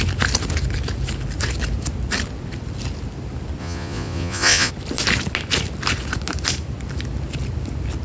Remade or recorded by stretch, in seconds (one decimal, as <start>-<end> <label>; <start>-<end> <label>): 0.0-3.6 recorded; 3.6-4.7 remade; 4.7-8.0 recorded